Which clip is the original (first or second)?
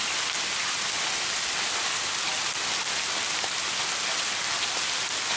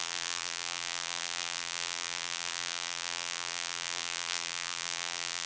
first